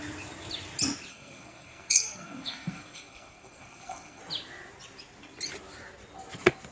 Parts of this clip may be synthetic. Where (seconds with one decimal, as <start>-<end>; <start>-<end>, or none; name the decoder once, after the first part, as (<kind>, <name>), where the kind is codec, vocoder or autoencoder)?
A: 1.1-4.2 (codec, SNAC)